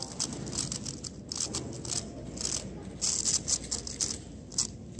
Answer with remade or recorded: recorded